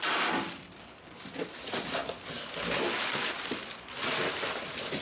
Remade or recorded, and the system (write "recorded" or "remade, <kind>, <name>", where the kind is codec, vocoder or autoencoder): recorded